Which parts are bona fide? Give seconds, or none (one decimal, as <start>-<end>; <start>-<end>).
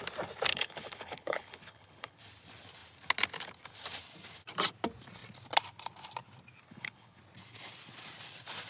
0.0-0.5; 2.2-6.6; 7.2-8.7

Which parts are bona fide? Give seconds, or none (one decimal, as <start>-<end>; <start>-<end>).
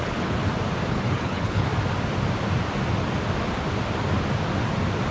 0.4-0.9; 1.7-5.1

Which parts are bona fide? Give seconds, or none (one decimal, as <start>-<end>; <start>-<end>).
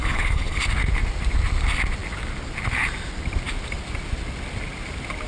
0.6-5.3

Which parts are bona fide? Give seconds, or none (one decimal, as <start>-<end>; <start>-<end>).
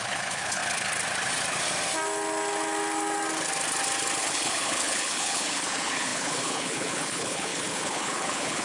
0.6-4.2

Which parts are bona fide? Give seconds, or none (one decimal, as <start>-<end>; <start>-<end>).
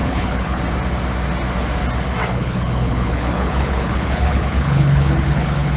0.6-2.2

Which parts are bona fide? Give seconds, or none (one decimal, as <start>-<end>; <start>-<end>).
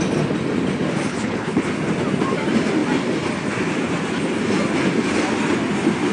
0.0-1.1; 1.6-6.1